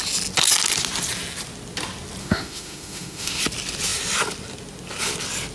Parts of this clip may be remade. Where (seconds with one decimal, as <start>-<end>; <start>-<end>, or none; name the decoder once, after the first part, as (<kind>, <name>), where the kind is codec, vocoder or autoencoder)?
2.2-3.4 (autoencoder, DAC-VAE)